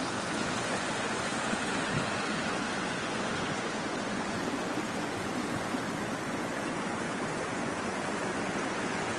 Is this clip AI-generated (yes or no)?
yes